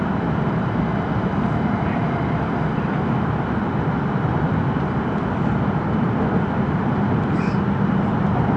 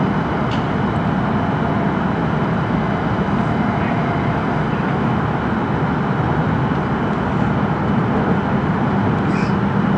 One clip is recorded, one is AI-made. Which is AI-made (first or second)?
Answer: first